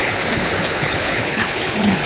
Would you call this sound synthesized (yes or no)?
yes